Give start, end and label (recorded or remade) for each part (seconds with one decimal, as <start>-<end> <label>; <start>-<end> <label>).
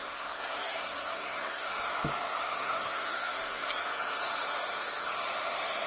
0.0-1.7 remade; 1.7-2.4 recorded; 2.4-3.8 remade; 3.8-5.9 recorded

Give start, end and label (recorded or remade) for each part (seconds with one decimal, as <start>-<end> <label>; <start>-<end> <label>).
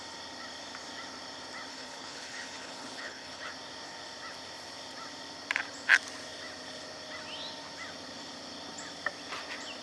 0.0-1.7 recorded; 1.7-3.5 remade; 3.5-9.8 recorded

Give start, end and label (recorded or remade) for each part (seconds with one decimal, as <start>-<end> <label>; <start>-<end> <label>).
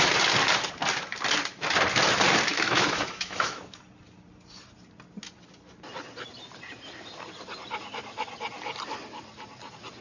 0.0-2.5 recorded; 2.5-3.8 remade; 3.8-10.0 recorded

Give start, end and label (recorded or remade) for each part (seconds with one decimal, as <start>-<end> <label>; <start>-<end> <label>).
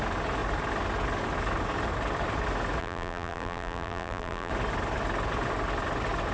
0.0-2.8 recorded; 2.8-4.5 remade; 4.5-6.3 recorded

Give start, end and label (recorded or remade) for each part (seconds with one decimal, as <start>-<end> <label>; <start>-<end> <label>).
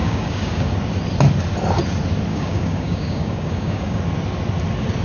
0.0-0.7 remade; 0.7-2.3 recorded; 2.3-4.0 remade; 4.0-5.0 recorded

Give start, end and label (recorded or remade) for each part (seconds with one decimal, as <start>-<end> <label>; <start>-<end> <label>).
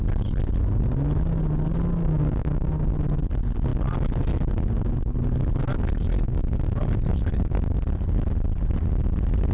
0.0-2.0 recorded; 2.0-2.7 remade; 2.7-9.5 recorded